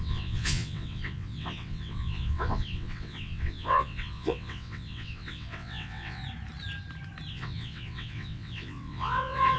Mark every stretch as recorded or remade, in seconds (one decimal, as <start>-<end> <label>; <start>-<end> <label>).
0.0-6.2 remade; 6.2-7.3 recorded; 7.3-9.6 remade